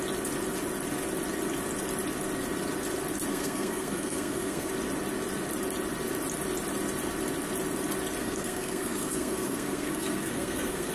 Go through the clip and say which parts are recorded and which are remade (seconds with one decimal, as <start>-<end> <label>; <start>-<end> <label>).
0.0-3.3 recorded; 3.3-4.7 remade; 4.7-8.2 recorded; 8.2-10.9 remade